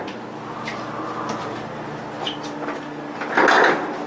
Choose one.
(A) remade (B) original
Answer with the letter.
B